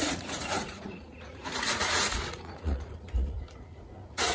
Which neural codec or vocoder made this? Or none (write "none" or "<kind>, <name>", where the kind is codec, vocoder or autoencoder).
vocoder, Vocos